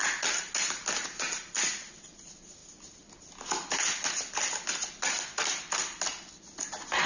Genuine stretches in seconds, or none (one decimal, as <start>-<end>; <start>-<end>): 0.0-7.1

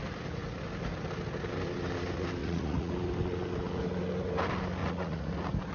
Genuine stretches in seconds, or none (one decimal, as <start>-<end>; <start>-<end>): 0.0-2.4; 2.9-4.8; 5.3-5.7

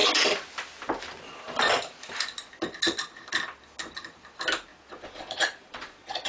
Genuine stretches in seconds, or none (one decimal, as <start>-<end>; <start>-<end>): 0.0-4.7

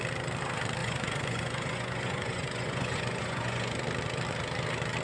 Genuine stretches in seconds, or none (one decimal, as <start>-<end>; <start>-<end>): 0.0-0.8; 3.8-5.0